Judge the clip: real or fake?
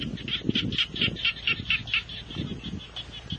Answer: real